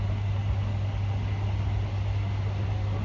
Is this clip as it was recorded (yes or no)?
yes